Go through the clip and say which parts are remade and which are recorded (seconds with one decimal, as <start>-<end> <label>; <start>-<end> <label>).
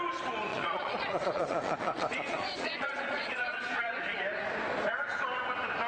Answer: 0.0-0.5 recorded; 0.5-4.0 remade; 4.0-5.9 recorded